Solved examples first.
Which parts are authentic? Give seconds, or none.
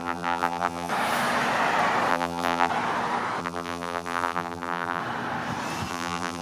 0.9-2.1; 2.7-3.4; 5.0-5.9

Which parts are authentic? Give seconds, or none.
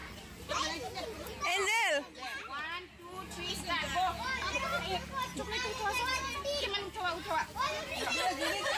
0.0-3.5; 4.7-6.6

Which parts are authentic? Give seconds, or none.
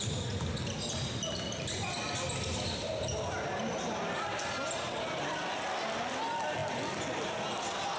0.0-8.0